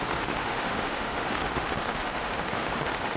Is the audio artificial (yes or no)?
yes